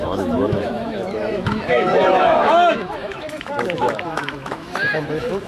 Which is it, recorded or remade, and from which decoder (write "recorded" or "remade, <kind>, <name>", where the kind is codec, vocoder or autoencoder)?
remade, autoencoder, DAC-VAE